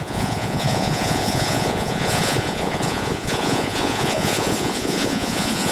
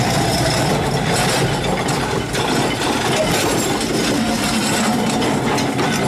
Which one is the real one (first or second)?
second